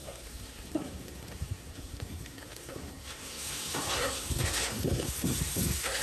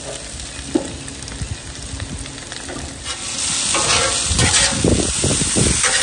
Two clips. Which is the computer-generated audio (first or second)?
first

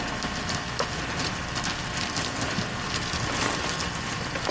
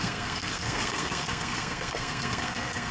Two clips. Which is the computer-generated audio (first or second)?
second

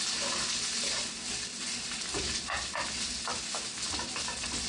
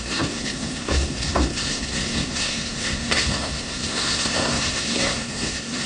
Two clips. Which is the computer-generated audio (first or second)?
second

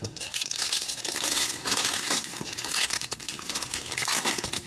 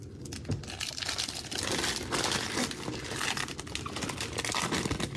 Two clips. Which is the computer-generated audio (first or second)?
first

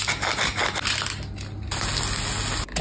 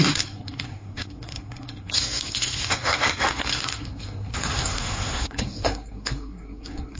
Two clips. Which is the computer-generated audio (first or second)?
second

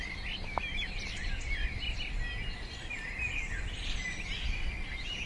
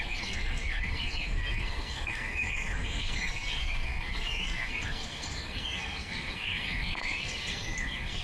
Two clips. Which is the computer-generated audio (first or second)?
second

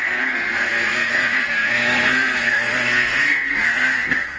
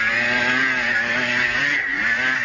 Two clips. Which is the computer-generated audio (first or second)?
first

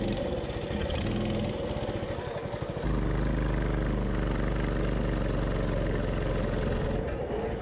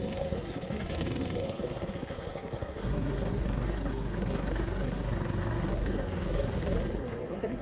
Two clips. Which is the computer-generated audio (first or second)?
second